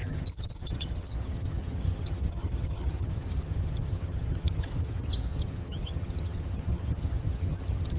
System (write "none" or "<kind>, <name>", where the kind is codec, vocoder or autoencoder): vocoder, HiFi-GAN